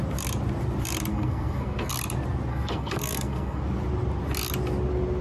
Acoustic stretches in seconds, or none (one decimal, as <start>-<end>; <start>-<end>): 0.0-1.1; 1.9-2.5; 3.6-5.2